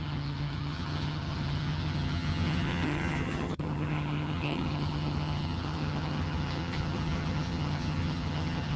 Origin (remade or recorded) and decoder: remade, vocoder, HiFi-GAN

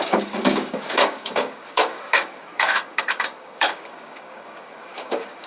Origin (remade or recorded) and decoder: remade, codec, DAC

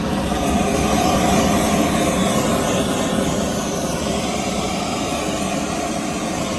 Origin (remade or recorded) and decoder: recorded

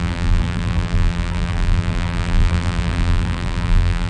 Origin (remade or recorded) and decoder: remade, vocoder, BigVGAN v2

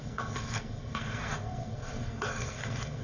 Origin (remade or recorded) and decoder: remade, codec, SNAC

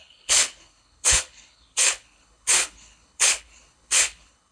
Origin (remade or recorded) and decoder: remade, codec, HILCodec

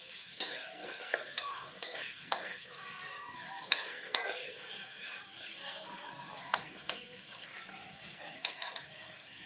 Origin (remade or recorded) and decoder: remade, codec, SNAC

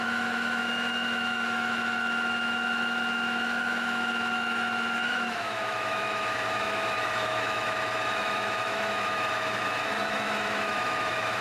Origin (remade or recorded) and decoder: remade, autoencoder, DAC-VAE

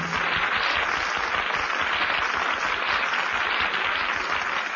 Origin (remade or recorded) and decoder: recorded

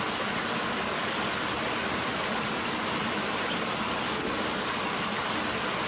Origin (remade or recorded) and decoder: recorded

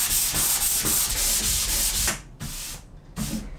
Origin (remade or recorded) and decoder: recorded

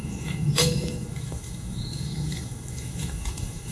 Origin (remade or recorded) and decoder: remade, autoencoder, DAC-VAE